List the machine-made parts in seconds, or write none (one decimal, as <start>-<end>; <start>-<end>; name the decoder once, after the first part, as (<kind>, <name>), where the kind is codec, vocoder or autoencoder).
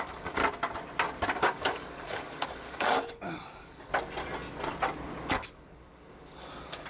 0.0-0.4 (codec, DAC); 1.4-3.9; 5.3-6.9